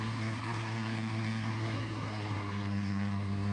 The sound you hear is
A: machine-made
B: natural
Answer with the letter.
A